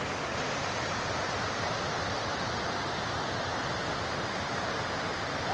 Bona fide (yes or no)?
yes